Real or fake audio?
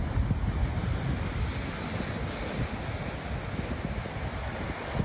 real